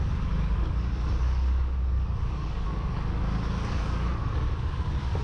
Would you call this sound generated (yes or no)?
yes